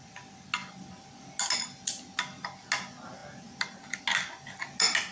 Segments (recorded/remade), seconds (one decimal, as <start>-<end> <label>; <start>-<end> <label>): 0.0-5.1 recorded